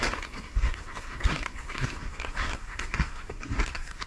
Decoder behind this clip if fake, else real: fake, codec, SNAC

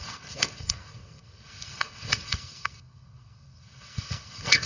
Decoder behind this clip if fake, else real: fake, codec, SNAC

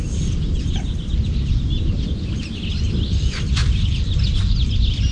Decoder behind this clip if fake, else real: real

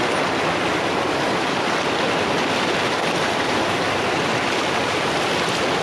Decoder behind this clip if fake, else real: real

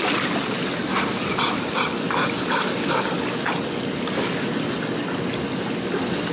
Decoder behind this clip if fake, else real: real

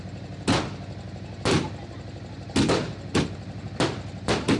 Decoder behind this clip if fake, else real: real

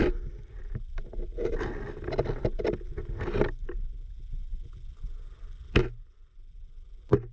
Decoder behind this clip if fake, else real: real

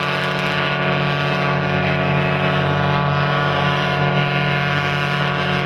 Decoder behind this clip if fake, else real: real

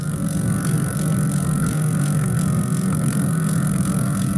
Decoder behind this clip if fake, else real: fake, codec, SNAC